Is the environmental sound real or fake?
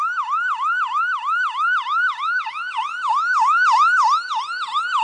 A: real